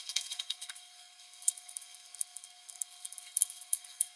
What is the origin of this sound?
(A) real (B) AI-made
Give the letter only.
B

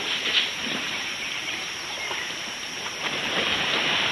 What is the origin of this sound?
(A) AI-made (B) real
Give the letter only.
A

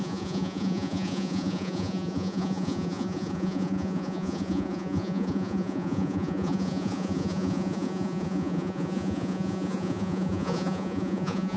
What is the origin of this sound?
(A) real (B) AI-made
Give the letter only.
B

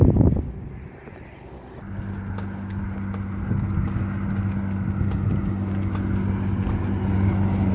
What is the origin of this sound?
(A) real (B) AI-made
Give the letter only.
A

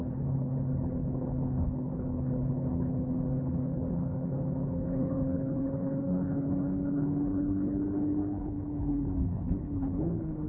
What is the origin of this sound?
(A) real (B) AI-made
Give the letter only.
B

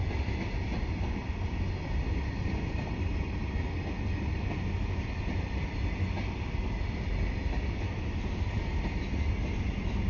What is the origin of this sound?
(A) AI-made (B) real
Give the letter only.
B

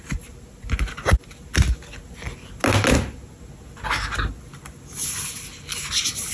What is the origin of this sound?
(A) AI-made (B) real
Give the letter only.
B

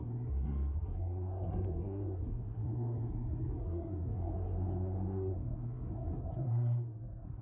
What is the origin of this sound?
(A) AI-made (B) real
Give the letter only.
A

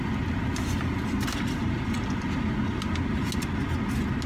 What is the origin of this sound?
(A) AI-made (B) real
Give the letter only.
B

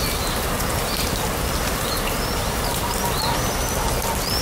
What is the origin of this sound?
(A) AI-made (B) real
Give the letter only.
B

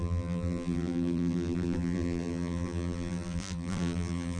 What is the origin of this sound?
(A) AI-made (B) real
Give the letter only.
A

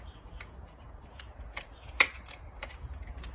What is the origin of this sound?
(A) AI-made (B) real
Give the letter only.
A